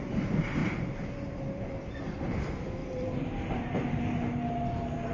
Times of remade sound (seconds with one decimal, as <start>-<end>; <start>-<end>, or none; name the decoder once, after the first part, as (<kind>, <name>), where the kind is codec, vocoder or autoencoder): 0.6-2.0 (vocoder, BigVGAN v2); 2.8-4.0